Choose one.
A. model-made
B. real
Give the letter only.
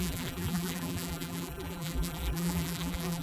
A